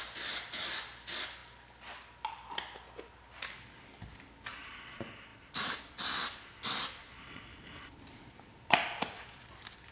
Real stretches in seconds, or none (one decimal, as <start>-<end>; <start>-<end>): 0.0-1.4; 2.8-5.3; 5.8-9.9